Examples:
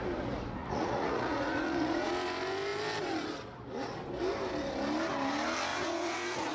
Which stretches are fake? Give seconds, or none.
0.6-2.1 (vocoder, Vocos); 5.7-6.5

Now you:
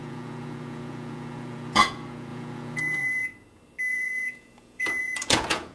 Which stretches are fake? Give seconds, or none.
0.0-3.3 (vocoder, Vocos); 3.9-5.7

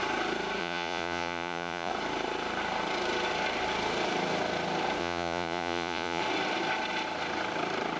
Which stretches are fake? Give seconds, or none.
0.6-1.9 (vocoder, Vocos); 5.0-6.2

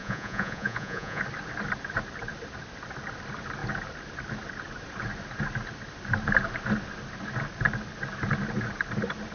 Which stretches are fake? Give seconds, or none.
0.0-1.2 (vocoder, Vocos)